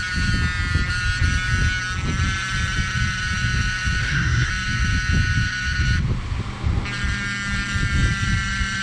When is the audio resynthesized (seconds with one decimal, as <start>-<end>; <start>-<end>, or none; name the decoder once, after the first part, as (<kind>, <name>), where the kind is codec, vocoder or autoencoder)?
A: 4.0-4.5 (codec, SNAC)